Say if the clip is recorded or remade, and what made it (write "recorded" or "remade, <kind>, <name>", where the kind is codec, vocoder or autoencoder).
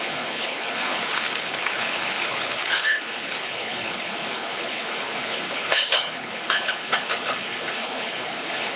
remade, codec, HILCodec